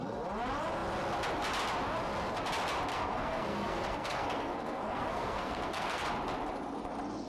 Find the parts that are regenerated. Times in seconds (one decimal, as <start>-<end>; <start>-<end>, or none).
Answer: 2.9-6.1